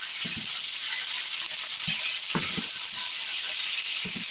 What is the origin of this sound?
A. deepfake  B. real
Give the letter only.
B